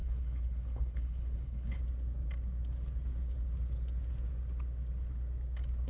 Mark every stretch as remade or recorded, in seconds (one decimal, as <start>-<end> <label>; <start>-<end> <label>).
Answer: 0.0-1.8 remade; 1.8-5.9 recorded